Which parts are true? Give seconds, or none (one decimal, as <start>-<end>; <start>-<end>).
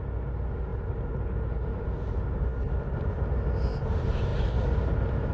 0.0-5.3